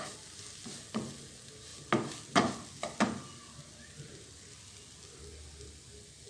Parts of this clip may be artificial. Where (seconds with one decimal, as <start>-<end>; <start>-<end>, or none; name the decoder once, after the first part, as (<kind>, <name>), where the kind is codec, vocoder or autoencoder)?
none